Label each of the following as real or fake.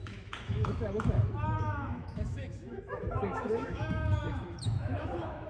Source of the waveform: fake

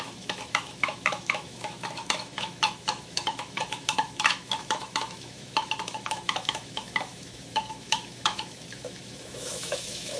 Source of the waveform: fake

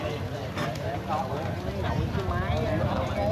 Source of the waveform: real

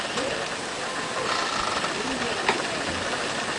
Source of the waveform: real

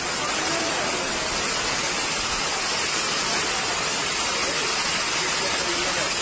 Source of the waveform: real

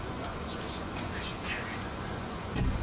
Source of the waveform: fake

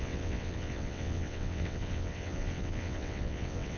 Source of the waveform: fake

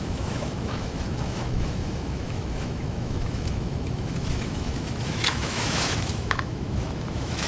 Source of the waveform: fake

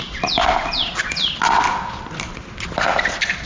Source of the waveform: real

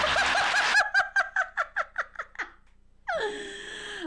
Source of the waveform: real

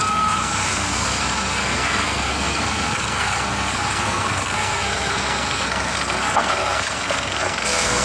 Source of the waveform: fake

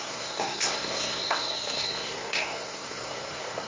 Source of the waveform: fake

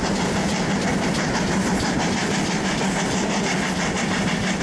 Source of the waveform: real